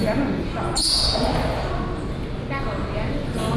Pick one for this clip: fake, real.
real